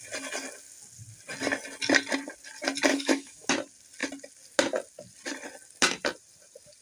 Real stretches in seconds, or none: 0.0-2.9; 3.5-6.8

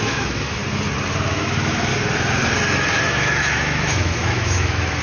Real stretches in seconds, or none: 0.6-1.2; 1.9-2.9

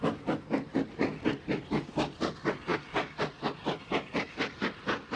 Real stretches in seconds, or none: 0.0-5.2

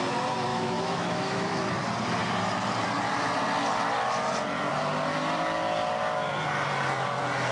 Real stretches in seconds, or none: 0.0-0.5; 1.6-7.5

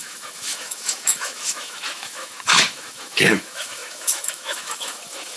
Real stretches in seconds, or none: none

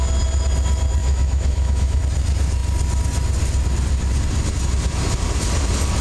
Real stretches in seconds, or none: 0.0-1.0; 2.0-6.0

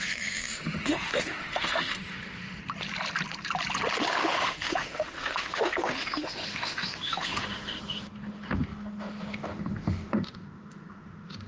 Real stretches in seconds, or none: 2.6-4.1

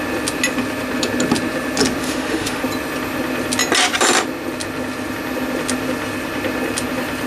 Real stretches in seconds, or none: 0.0-2.0; 2.6-7.3